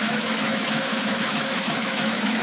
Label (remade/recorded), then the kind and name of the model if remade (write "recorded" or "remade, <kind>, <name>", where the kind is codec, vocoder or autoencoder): remade, autoencoder, DAC-VAE